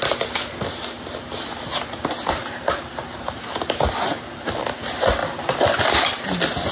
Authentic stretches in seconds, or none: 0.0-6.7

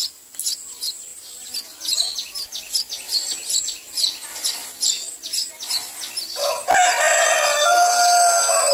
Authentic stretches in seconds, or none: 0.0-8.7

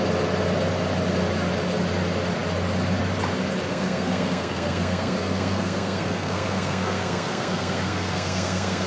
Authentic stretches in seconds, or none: 0.0-3.7